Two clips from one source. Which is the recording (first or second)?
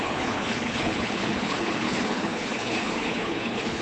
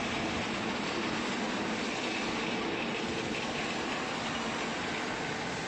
second